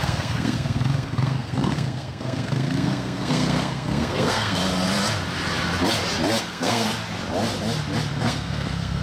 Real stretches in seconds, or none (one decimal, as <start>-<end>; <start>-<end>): 4.6-6.4; 6.9-8.1